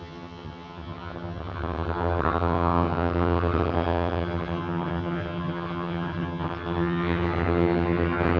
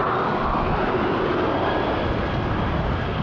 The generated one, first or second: first